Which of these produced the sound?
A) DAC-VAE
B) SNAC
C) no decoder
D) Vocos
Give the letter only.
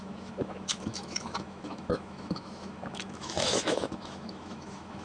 A